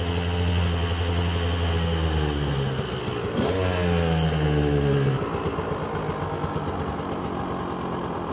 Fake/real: real